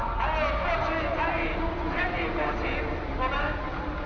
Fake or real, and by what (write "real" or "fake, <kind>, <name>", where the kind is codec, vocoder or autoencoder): real